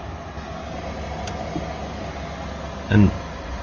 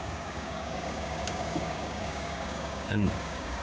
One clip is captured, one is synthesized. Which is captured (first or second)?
first